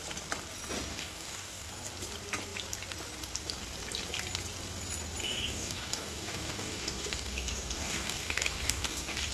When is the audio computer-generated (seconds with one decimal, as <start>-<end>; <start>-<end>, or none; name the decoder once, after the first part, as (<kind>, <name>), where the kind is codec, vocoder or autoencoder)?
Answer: 0.9-1.7 (codec, DAC); 5.2-9.3